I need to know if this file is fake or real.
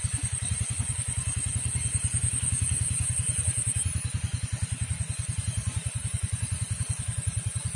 real